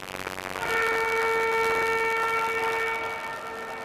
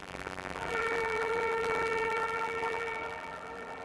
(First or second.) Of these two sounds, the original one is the first